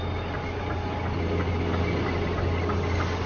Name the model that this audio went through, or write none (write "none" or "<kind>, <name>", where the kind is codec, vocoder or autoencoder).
none